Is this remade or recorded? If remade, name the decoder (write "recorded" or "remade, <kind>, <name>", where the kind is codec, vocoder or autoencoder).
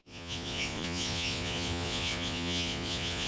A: remade, vocoder, Vocos